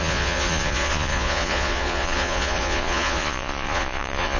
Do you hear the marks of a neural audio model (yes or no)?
yes